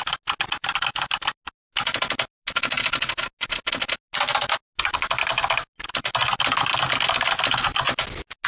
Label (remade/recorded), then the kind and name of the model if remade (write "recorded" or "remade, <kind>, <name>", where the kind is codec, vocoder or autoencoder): recorded